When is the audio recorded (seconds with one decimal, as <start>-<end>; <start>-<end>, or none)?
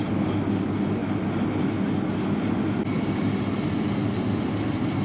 0.0-5.0